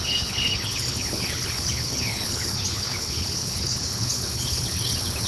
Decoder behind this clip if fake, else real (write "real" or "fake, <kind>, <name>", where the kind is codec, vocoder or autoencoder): fake, codec, HILCodec